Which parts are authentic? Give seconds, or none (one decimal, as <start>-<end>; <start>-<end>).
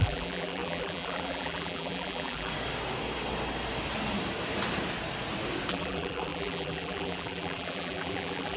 2.5-5.7